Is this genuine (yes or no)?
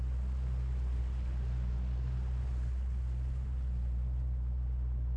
yes